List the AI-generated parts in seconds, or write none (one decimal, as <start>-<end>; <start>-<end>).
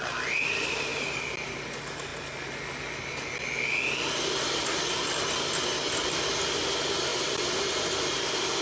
7.1-7.8